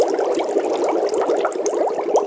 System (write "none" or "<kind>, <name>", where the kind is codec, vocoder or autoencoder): none